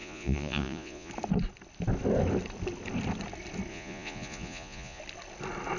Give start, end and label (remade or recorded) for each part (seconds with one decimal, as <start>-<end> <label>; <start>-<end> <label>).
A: 0.0-1.1 remade; 1.1-3.7 recorded; 3.7-5.0 remade; 5.0-5.8 recorded